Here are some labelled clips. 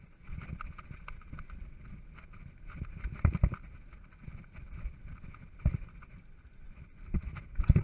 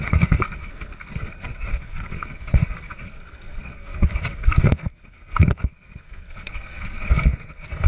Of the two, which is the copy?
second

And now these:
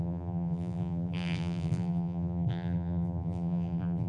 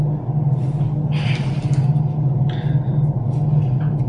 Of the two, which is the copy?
first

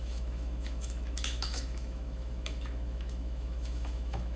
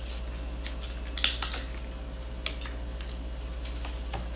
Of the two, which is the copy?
first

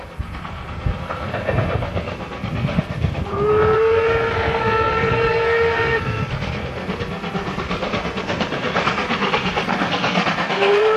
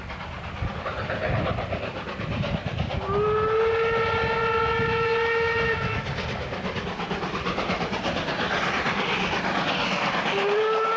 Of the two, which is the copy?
first